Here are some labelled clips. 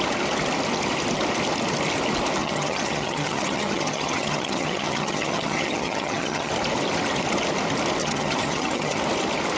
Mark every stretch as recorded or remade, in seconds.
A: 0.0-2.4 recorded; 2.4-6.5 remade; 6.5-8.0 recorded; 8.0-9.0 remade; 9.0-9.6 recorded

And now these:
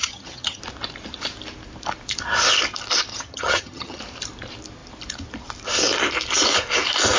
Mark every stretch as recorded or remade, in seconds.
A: 0.0-0.6 remade; 0.6-3.1 recorded; 3.1-4.0 remade; 4.0-7.2 recorded

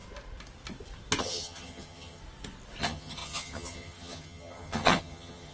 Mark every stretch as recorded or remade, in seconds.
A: 0.0-1.2 recorded; 1.2-2.2 remade; 2.2-2.8 recorded; 2.8-5.5 remade

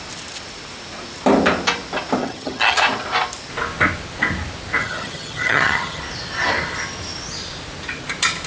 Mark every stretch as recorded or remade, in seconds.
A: 0.0-2.2 recorded; 2.2-2.8 remade; 2.8-4.8 recorded; 4.8-6.0 remade; 6.0-8.5 recorded

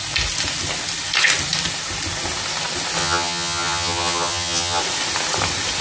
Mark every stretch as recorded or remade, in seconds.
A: 0.0-3.0 recorded; 3.0-4.8 remade; 4.8-5.8 recorded

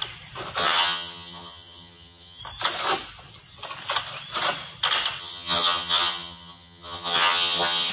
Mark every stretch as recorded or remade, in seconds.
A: 0.0-0.6 recorded; 0.6-2.4 remade; 2.4-5.2 recorded; 5.2-7.9 remade